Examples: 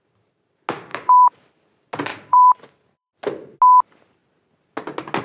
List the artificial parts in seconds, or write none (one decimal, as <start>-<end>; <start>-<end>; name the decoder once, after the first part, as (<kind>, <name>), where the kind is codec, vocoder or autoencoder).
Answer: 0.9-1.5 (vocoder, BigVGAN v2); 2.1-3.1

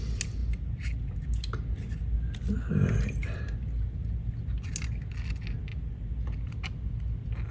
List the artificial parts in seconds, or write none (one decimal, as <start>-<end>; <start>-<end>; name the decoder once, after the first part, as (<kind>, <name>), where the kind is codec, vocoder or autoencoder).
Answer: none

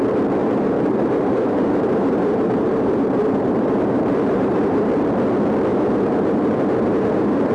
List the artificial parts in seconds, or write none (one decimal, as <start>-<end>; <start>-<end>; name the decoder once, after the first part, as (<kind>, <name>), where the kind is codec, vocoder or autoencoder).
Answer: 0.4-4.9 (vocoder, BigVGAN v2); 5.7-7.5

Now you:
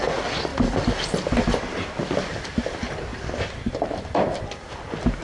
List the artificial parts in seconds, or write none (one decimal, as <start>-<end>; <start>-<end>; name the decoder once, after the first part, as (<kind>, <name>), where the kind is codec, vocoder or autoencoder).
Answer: 0.5-2.0 (vocoder, BigVGAN v2)

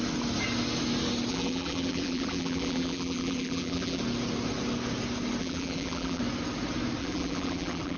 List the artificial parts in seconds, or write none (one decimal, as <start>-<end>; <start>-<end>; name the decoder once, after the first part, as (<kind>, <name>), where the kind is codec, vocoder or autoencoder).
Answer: 1.3-4.0 (vocoder, BigVGAN v2); 5.4-6.2; 7.0-8.0